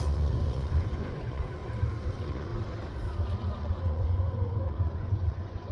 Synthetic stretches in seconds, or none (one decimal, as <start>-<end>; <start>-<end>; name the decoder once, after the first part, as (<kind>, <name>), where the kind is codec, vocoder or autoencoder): 0.0-1.6 (vocoder, Vocos); 2.1-2.5; 3.6-5.7